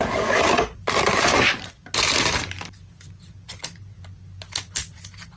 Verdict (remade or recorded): recorded